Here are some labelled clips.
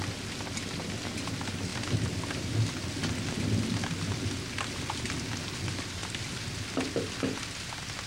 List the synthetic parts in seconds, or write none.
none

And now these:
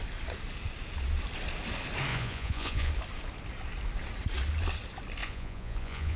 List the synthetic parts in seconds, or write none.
2.1-2.9 (vocoder, Vocos); 5.2-6.2

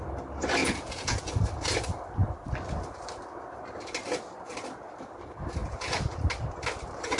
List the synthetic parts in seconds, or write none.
0.6-1.3 (vocoder, Vocos); 5.6-6.2